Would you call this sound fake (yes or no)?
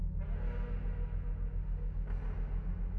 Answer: no